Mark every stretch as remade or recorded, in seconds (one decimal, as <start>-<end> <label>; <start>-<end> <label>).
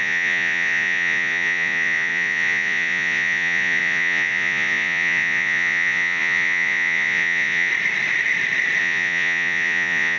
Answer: 0.0-7.7 remade; 7.7-8.8 recorded; 8.8-10.2 remade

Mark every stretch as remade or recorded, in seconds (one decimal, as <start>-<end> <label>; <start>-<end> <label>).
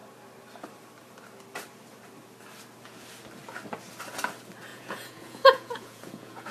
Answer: 0.0-4.7 recorded; 4.7-6.5 remade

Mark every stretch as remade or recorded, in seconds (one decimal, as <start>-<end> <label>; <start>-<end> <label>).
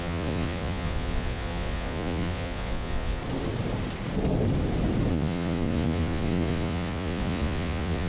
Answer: 0.0-3.2 remade; 3.2-5.1 recorded; 5.1-8.1 remade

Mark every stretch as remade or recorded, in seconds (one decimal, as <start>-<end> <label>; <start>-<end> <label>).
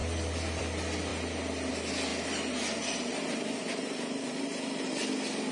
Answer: 0.0-5.5 recorded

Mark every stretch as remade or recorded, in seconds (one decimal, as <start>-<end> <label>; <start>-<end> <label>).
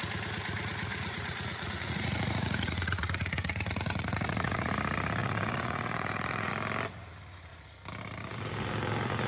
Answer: 0.0-0.9 recorded; 0.9-4.7 remade; 4.7-5.2 recorded; 5.2-6.5 remade; 6.5-9.3 recorded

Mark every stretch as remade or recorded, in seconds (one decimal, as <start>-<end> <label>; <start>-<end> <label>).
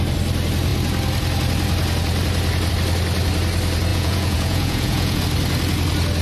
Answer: 0.0-3.9 recorded; 3.9-5.2 remade; 5.2-6.2 recorded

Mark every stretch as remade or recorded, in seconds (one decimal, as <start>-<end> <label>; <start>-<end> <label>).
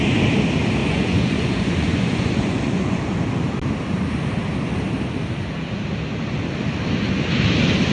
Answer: 0.0-0.8 recorded; 0.8-3.0 remade; 3.0-7.9 recorded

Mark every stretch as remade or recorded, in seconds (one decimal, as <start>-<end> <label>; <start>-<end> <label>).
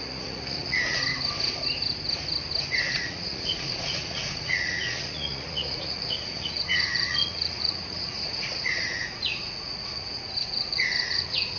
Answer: 0.0-1.1 remade; 1.1-2.9 recorded; 2.9-11.6 remade